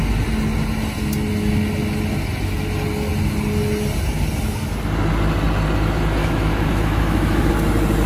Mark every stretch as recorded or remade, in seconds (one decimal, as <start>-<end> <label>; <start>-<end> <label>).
0.0-6.2 recorded; 6.2-7.5 remade; 7.5-8.1 recorded